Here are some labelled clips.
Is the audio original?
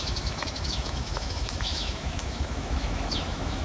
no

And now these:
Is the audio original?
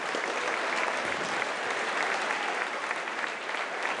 no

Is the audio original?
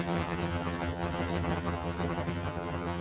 no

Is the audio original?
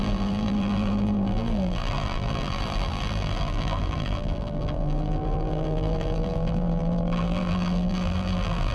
no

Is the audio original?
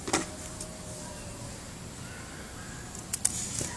yes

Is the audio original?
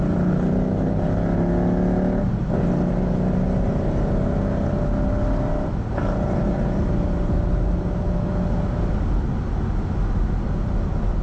yes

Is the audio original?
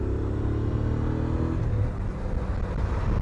yes